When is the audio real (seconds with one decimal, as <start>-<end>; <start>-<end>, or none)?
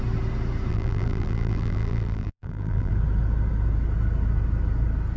0.0-0.7; 2.9-5.2